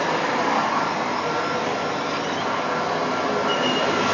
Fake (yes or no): no